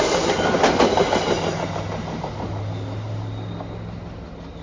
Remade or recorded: recorded